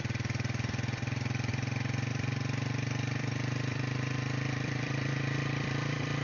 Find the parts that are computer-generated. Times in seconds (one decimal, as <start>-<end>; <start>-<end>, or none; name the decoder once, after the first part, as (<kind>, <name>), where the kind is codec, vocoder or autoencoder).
0.0-1.5 (vocoder, BigVGAN v2); 2.1-6.2